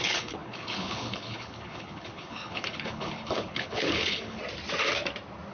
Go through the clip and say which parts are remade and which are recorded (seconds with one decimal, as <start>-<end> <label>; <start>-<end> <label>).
0.0-4.4 remade; 4.4-5.5 recorded